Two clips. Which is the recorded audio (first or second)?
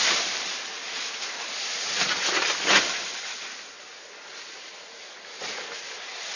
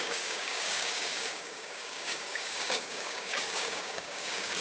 first